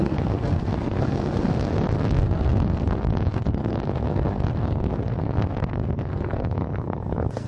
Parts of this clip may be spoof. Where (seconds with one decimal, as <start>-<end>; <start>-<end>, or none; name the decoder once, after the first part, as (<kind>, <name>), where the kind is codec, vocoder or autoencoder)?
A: 0.0-7.5 (codec, SNAC)